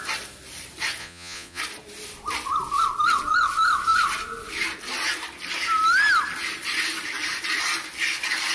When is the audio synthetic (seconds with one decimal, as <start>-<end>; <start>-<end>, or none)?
1.0-1.6